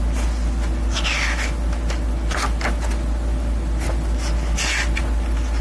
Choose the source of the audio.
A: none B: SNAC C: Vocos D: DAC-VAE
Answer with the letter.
A